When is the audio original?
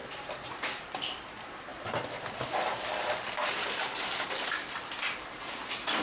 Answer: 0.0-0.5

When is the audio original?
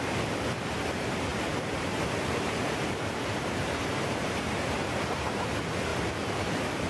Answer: 0.0-1.3; 5.4-5.9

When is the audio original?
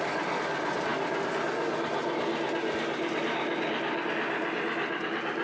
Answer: 0.0-5.4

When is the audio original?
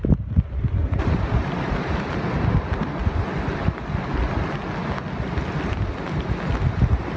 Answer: 0.0-0.8; 2.2-7.2